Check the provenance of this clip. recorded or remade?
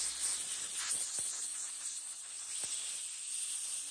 recorded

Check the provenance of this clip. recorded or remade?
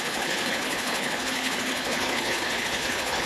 remade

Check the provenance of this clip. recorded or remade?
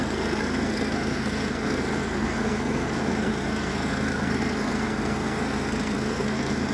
remade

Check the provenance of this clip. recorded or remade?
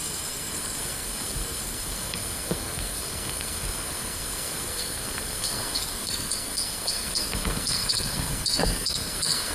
remade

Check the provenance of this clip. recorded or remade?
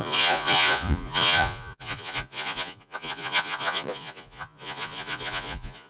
remade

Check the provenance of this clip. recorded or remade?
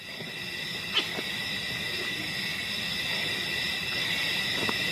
recorded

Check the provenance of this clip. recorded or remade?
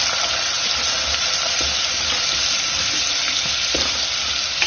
recorded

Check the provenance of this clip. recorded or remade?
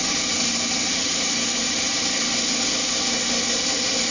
recorded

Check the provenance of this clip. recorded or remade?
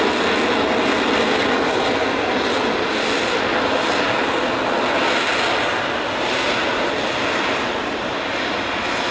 recorded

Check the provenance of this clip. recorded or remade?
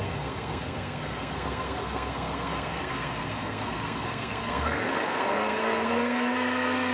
remade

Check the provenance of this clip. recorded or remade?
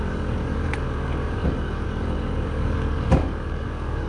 remade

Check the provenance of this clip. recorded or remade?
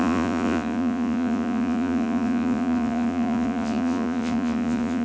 remade